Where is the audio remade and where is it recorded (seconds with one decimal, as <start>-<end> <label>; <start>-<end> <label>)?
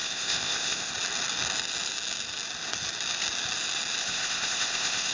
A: 0.0-0.9 remade; 0.9-4.0 recorded; 4.0-5.1 remade